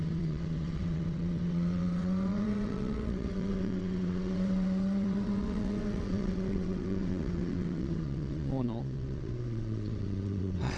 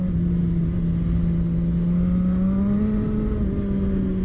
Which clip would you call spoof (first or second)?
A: first